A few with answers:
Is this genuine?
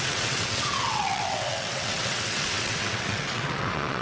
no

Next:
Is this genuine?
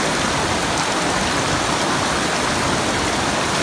yes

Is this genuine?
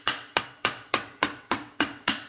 no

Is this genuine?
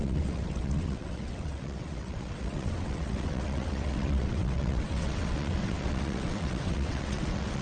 no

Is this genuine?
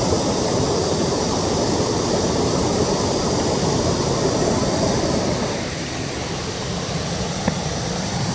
yes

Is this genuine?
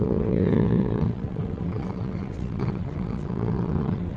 no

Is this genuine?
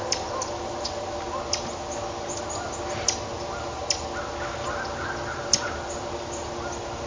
yes